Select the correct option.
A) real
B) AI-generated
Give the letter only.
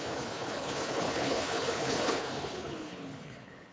B